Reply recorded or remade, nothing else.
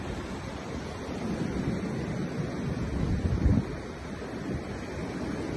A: recorded